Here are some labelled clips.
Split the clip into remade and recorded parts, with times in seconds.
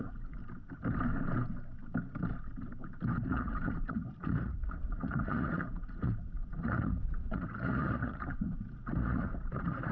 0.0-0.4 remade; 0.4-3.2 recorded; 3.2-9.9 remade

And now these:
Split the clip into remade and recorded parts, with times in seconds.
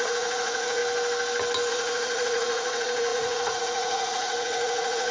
0.0-0.8 remade; 0.8-1.7 recorded; 1.7-5.1 remade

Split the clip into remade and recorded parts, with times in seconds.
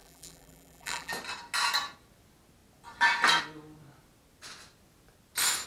0.0-1.1 remade; 1.1-5.7 recorded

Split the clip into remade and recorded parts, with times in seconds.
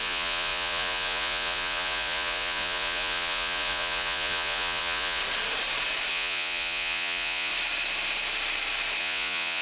0.0-5.2 remade; 5.2-6.1 recorded; 6.1-7.5 remade; 7.5-9.0 recorded; 9.0-9.6 remade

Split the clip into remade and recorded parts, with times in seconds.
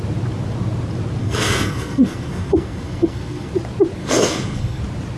0.0-1.2 recorded; 1.2-3.5 remade; 3.5-4.0 recorded; 4.0-4.8 remade; 4.8-5.2 recorded